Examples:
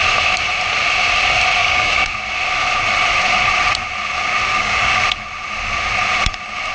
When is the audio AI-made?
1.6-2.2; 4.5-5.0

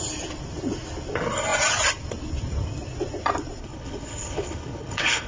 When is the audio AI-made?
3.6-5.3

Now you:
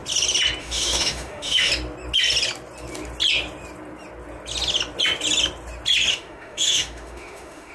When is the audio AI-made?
0.6-1.7; 6.1-7.7